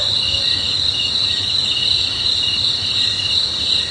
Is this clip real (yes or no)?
yes